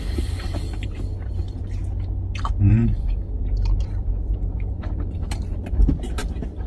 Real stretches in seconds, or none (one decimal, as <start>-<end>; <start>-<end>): 1.8-2.7